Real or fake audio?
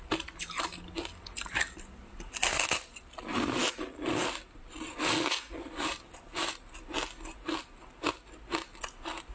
real